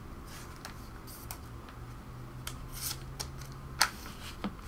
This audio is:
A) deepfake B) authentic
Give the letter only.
B